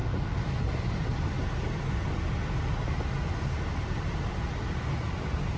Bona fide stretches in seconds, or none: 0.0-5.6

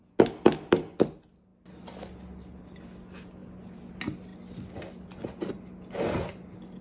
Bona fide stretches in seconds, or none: 0.0-6.8

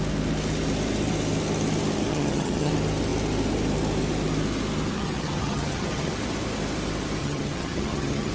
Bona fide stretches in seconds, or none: 0.0-2.1; 2.7-4.9; 6.1-7.2

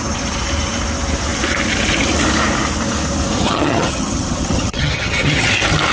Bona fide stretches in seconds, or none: 0.0-3.4; 5.5-5.9

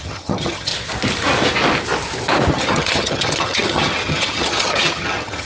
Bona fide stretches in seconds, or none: 0.7-2.5

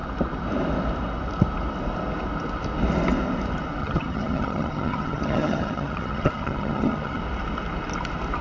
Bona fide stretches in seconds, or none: 0.0-3.8; 7.2-8.4

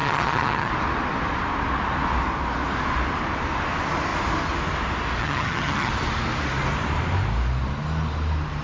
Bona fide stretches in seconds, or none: 0.7-5.2; 5.9-8.6